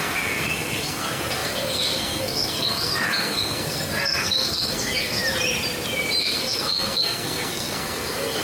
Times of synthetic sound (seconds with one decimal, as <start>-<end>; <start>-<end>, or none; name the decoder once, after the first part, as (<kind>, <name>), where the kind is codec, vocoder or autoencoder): 0.0-5.2 (codec, SNAC); 6.2-8.4

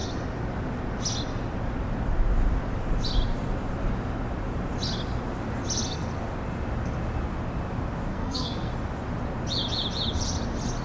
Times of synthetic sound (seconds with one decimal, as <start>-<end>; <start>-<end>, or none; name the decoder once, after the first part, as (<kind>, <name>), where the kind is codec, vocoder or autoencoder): 8.1-8.7 (codec, SNAC)

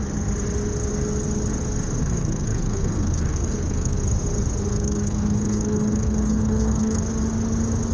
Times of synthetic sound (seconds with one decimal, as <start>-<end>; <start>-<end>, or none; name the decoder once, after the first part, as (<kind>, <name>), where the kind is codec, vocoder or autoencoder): 2.0-4.0 (codec, SNAC); 4.7-7.0

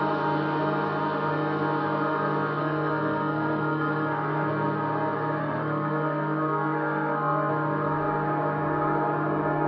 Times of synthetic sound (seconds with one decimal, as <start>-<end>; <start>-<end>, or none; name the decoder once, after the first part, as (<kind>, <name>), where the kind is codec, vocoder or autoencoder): 2.6-4.5 (codec, SNAC); 5.4-7.5

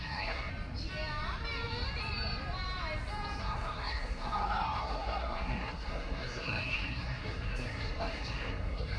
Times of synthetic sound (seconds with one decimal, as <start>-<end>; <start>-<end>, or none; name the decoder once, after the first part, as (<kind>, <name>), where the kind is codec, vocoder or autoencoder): 0.0-0.5 (codec, SNAC); 3.4-9.0

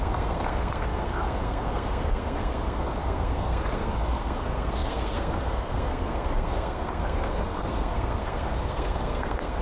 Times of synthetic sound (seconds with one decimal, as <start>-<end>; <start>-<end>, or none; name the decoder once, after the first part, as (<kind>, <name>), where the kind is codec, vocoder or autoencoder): 0.0-9.6 (codec, SNAC)

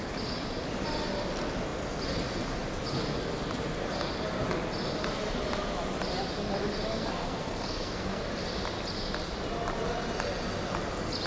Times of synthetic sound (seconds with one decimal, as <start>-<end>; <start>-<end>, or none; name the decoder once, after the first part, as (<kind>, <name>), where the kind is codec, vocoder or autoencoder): 6.9-8.3 (codec, SNAC)